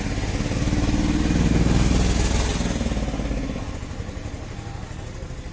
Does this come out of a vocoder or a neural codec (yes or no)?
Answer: no